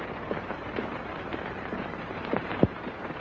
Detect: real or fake fake